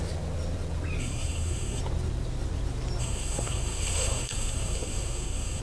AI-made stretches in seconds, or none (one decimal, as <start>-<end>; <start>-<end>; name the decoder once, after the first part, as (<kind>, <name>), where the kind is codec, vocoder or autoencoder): 1.0-1.8 (codec, SNAC); 3.0-5.6